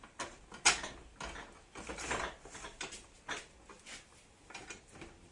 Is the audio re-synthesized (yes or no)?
no